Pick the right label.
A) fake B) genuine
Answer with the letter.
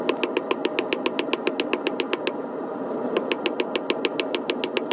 B